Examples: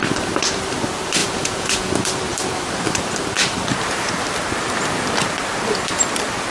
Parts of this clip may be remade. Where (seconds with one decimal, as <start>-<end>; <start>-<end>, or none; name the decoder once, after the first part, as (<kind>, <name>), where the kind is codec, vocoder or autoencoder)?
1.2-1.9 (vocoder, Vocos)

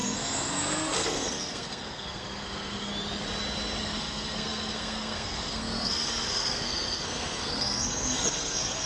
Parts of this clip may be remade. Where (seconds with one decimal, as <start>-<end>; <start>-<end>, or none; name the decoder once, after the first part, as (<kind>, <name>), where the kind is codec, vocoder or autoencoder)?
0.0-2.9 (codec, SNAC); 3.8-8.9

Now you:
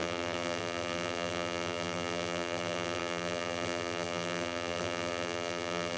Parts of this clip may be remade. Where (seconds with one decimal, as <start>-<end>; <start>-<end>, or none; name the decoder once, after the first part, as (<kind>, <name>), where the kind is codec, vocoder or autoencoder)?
0.0-6.0 (vocoder, BigVGAN v2)

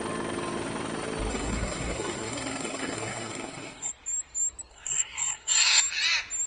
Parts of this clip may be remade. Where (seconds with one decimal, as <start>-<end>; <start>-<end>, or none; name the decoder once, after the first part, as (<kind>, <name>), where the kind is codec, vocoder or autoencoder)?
1.3-3.9 (codec, SNAC); 4.7-5.8

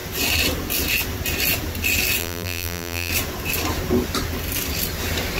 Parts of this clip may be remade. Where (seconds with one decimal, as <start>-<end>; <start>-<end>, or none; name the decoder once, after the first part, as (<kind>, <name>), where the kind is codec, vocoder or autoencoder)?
2.2-3.1 (vocoder, BigVGAN v2)